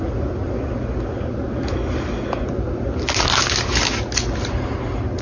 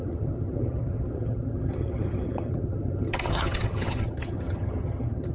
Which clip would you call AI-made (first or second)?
second